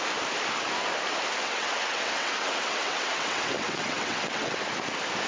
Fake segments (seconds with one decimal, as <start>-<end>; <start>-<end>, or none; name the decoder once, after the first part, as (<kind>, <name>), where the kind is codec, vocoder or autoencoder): 1.4-4.6 (vocoder, WaveNeXt)